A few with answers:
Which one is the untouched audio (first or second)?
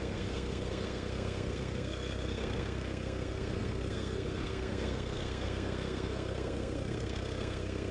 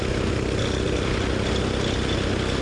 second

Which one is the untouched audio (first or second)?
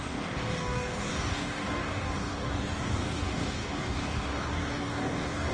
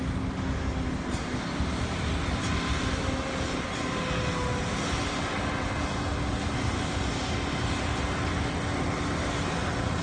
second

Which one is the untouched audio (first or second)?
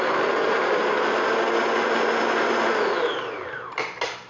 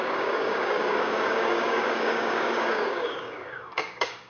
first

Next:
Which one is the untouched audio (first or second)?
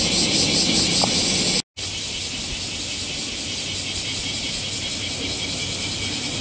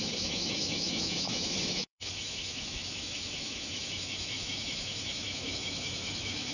first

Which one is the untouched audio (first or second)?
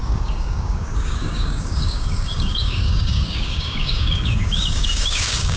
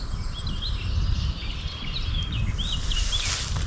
second